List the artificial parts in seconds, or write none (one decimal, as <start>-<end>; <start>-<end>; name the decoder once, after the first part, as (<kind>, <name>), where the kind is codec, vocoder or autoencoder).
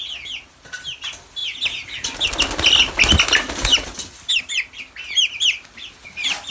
none